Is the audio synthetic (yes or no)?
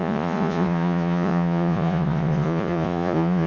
yes